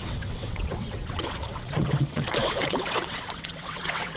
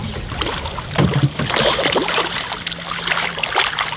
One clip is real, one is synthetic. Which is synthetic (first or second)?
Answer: first